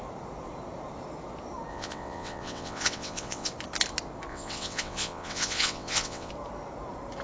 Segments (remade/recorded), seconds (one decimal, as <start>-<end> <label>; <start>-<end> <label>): 0.0-1.7 recorded; 1.7-3.5 remade; 3.5-4.3 recorded; 4.3-6.3 remade; 6.3-7.2 recorded